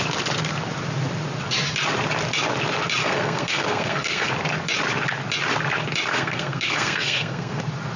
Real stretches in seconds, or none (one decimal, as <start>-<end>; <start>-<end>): 0.0-3.0; 4.3-6.1; 7.6-8.0